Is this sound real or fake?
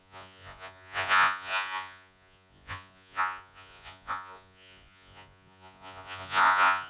fake